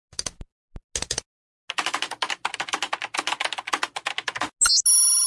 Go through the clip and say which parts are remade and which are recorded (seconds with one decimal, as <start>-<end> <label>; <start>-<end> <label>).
0.0-5.3 recorded